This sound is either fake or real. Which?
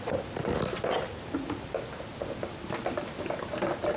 real